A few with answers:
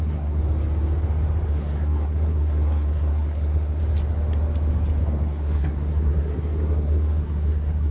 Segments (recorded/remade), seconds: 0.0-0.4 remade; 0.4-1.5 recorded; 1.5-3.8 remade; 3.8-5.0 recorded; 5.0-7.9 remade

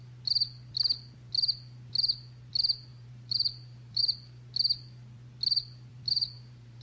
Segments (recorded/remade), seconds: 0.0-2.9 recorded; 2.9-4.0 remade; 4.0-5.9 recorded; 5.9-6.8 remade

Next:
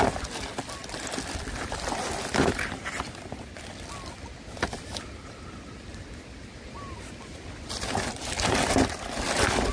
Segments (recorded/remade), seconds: 0.0-9.7 recorded